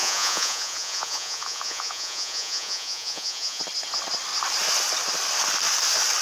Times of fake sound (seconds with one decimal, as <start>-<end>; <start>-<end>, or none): 0.0-3.6